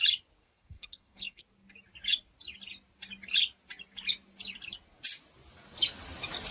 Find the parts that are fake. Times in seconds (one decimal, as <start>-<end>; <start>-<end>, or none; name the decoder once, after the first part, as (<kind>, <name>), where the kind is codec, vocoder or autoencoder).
0.4-1.4 (codec, SNAC)